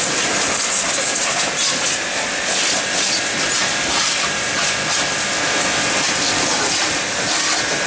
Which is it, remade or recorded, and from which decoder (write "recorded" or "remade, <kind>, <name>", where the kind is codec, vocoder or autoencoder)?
recorded